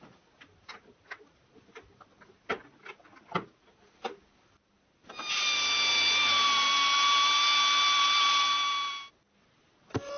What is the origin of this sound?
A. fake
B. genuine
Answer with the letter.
B